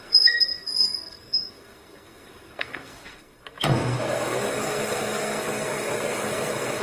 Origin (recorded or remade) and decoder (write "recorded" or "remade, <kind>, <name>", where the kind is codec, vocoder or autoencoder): remade, codec, SNAC